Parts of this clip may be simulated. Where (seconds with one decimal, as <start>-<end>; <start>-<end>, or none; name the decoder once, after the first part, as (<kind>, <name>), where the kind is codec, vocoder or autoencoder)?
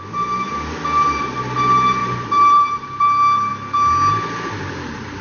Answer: 2.0-2.9 (vocoder, BigVGAN v2)